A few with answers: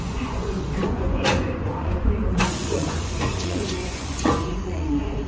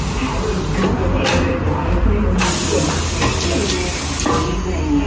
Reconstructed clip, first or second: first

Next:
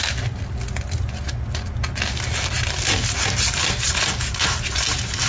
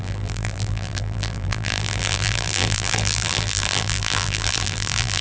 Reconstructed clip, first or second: second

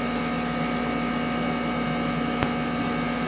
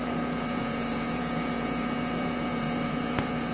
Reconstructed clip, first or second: second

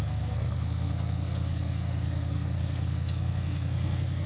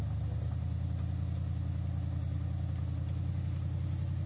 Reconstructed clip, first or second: first